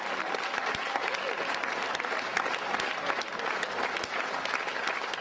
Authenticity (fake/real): real